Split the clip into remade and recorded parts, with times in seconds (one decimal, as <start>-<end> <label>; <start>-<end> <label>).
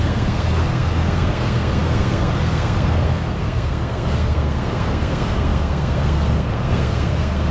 0.0-7.5 remade